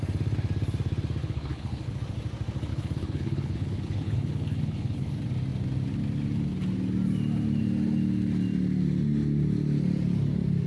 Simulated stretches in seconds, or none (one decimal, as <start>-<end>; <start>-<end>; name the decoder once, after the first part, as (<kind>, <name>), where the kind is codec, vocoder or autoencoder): 1.2-2.0 (codec, HILCodec); 2.7-5.1